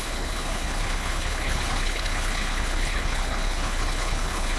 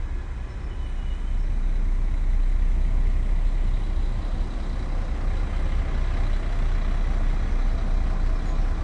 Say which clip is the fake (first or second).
first